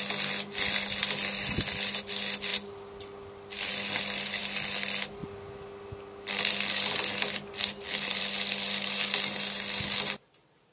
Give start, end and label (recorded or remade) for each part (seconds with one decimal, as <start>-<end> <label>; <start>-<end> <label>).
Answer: 0.0-1.0 recorded; 1.0-2.0 remade; 2.0-2.5 recorded; 2.5-4.4 remade; 4.4-5.2 recorded; 5.2-6.5 remade; 6.5-7.6 recorded; 7.6-8.2 remade; 8.2-10.7 recorded